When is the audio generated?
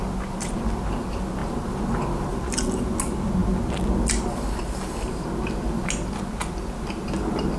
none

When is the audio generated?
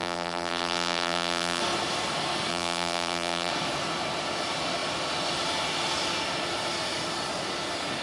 0.0-1.6; 2.5-3.5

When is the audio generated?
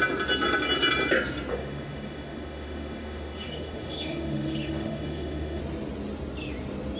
1.5-5.6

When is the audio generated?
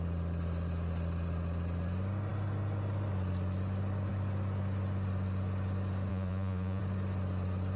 6.1-6.8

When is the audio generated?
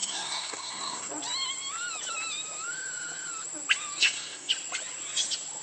0.0-1.1; 4.0-4.5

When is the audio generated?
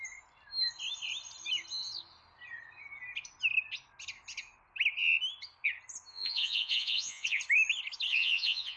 6.1-7.4; 8.1-8.8